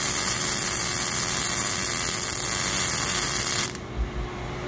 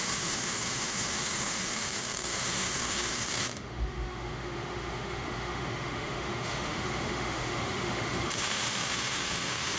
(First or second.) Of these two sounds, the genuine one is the first